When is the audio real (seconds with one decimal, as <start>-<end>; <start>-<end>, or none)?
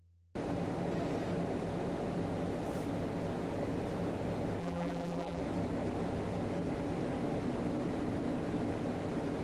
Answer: 0.0-4.6; 5.4-9.4